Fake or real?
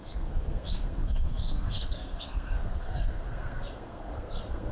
fake